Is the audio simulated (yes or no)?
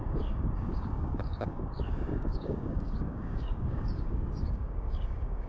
yes